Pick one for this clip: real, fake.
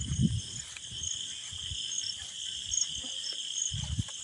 real